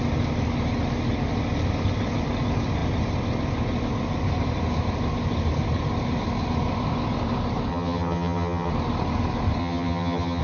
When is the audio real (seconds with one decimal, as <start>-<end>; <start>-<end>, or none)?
0.0-7.7; 8.7-9.6